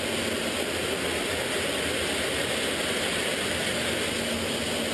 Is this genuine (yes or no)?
yes